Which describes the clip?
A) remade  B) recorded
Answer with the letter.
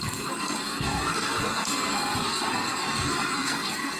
A